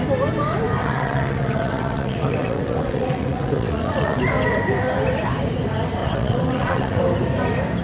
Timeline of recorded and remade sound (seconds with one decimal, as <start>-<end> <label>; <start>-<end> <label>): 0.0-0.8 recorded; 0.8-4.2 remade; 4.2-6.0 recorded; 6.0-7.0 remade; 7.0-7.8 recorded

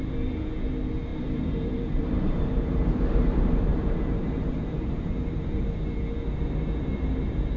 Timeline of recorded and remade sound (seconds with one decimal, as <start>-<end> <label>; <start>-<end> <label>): 0.0-1.1 recorded; 1.1-5.6 remade; 5.6-7.6 recorded

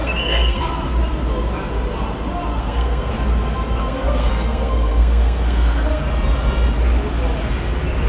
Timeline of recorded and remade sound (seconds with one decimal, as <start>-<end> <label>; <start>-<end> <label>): 0.0-0.6 remade; 0.6-2.5 recorded; 2.5-3.1 remade; 3.1-3.8 recorded; 3.8-6.0 remade; 6.0-8.1 recorded

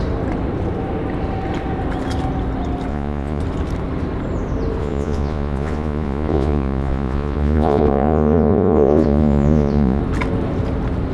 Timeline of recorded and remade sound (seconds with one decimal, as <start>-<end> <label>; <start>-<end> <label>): 0.0-2.9 recorded; 2.9-3.4 remade; 3.4-4.8 recorded; 4.8-10.0 remade; 10.0-11.1 recorded